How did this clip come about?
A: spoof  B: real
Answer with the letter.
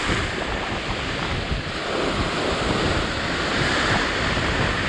B